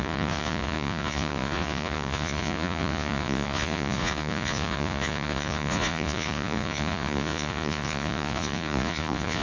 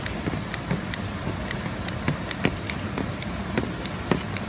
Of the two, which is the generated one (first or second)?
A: first